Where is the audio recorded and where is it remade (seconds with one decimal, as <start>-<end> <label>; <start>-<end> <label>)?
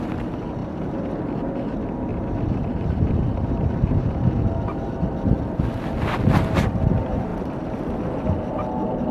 0.0-0.6 recorded; 0.6-1.1 remade; 1.1-2.1 recorded; 2.1-4.4 remade; 4.4-9.1 recorded